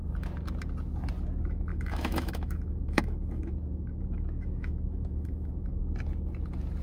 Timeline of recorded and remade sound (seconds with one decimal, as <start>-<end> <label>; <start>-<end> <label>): 0.0-1.7 recorded; 1.7-5.8 remade; 5.8-6.8 recorded